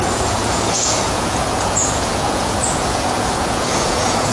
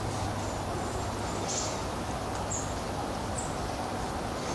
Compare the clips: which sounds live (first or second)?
second